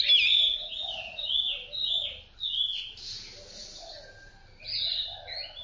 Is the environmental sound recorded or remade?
recorded